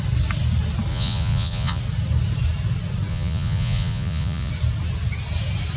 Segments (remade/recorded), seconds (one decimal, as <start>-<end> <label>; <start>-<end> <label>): 0.0-0.9 recorded; 0.9-1.8 remade; 1.8-3.1 recorded; 3.1-4.5 remade; 4.5-5.8 recorded